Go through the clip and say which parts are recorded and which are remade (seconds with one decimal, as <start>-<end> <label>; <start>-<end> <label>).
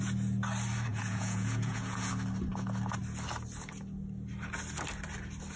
0.0-0.9 recorded; 0.9-2.1 remade; 2.1-5.6 recorded